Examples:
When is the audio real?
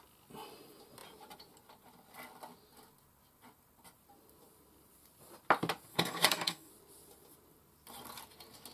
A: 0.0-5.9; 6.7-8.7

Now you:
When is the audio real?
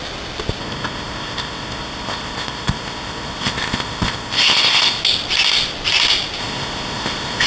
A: 0.0-0.6; 5.0-6.4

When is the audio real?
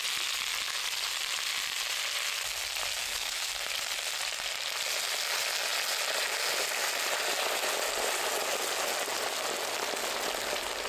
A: 0.0-3.0; 3.5-10.9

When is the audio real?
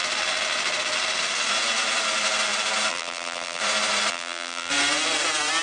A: 0.0-2.9; 3.6-4.1; 4.7-5.6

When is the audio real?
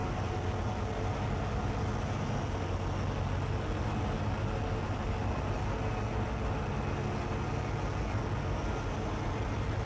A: 0.0-9.9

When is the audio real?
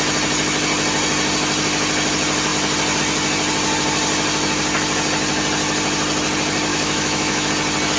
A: 0.0-6.7; 7.5-8.0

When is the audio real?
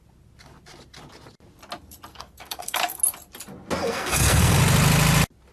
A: 0.0-2.1; 3.0-3.8; 4.6-5.5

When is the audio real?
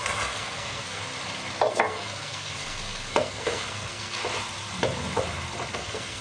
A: 1.0-1.7; 4.2-5.7